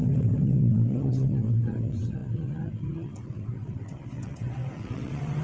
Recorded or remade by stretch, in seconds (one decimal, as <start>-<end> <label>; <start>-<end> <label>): 0.0-5.4 remade